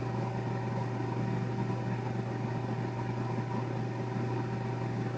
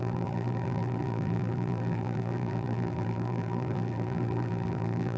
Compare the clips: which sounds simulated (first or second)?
second